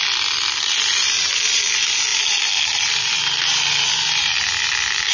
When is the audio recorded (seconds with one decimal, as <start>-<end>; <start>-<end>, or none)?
0.0-5.1